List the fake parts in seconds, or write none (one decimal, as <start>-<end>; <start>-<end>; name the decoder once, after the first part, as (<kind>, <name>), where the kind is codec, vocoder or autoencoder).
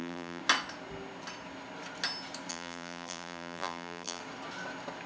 0.0-0.4 (vocoder, BigVGAN v2); 2.5-4.2